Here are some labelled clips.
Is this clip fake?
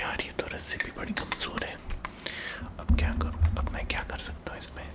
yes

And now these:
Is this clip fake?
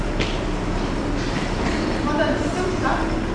no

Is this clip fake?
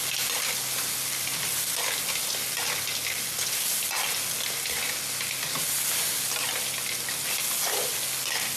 no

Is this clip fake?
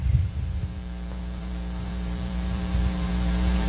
yes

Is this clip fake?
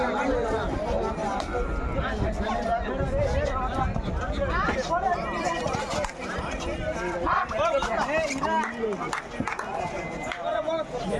no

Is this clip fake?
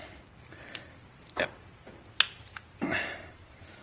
yes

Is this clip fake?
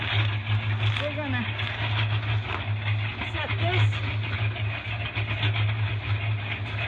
no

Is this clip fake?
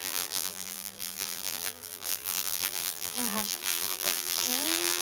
yes